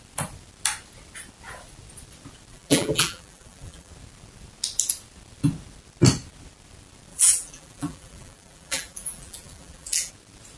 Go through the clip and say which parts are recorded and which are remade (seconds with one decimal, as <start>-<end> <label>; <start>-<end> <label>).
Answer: 0.0-2.5 recorded; 2.5-3.9 remade; 3.9-7.1 recorded; 7.1-10.1 remade; 10.1-10.6 recorded